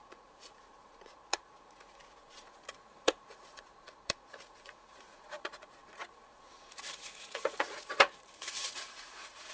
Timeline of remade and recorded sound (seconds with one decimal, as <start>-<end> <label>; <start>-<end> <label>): 0.0-9.5 remade